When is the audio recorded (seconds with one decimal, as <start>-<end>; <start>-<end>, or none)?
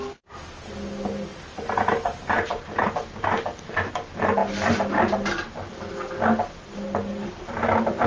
0.0-1.3; 3.9-7.1